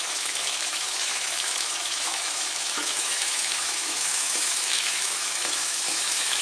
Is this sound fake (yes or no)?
yes